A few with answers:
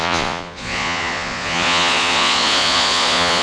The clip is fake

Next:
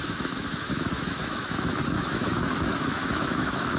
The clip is fake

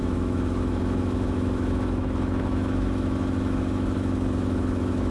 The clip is fake